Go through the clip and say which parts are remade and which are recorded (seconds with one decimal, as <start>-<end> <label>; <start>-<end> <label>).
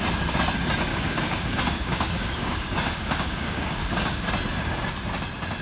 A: 0.0-0.9 recorded; 0.9-4.3 remade; 4.3-5.6 recorded